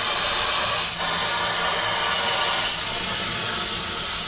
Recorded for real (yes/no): yes